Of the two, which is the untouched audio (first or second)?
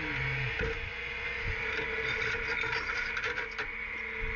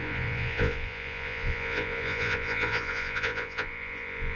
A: first